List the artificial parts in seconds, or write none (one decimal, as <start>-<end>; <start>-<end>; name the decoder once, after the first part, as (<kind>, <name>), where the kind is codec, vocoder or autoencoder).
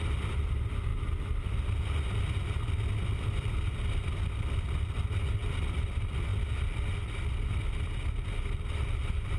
none